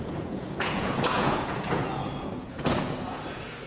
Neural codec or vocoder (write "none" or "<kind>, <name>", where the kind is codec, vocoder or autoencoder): vocoder, Vocos